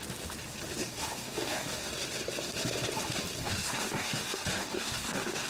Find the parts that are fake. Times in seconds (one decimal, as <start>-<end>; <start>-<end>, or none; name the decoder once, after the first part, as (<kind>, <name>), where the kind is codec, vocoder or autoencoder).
0.8-1.9 (codec, DAC); 3.4-5.5